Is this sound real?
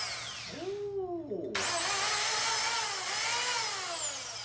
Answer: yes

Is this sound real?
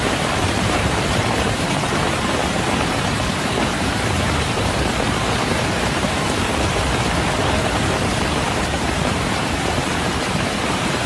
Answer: no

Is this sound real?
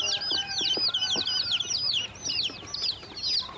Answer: yes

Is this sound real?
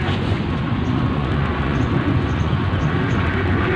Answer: no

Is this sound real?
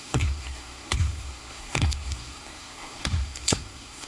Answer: no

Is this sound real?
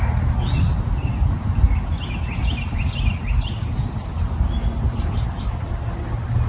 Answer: yes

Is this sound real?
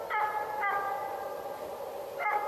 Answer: yes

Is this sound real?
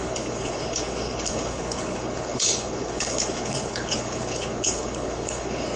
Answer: no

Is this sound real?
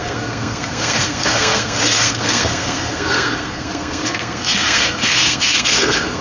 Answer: no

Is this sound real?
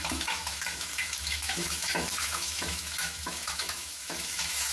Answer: no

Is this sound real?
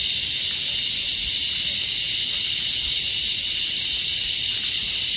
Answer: no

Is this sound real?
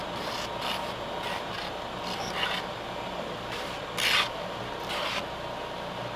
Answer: yes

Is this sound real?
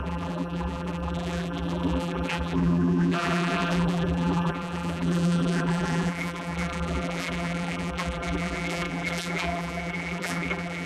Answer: no